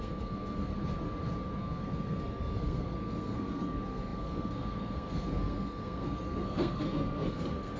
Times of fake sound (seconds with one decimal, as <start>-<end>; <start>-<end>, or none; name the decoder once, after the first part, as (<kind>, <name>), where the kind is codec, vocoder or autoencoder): 0.0-0.7 (codec, SNAC); 1.6-7.8